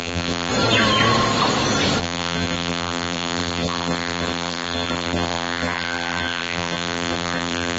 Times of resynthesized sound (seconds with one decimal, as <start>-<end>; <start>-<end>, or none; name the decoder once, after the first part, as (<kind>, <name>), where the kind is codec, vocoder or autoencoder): 0.0-0.5 (vocoder, BigVGAN v2); 2.0-7.8